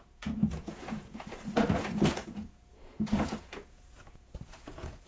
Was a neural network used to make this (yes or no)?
yes